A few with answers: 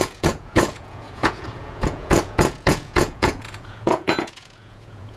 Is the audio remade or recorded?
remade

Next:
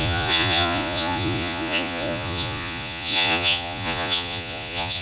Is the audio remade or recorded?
remade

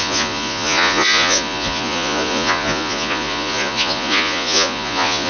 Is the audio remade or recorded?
remade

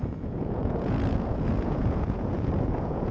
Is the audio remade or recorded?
remade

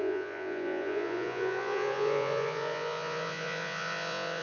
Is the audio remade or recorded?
remade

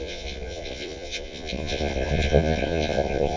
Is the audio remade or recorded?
remade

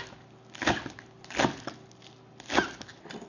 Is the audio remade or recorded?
recorded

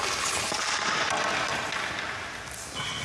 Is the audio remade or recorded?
recorded